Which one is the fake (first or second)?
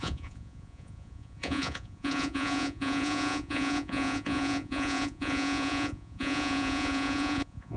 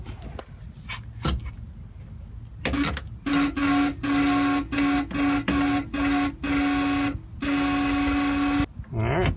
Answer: first